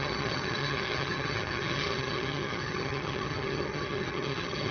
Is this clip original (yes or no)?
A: no